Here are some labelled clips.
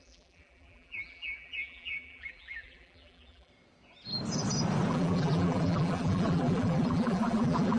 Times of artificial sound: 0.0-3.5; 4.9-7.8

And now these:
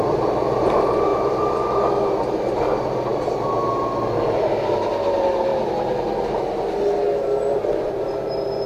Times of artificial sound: 0.0-5.5; 8.0-8.7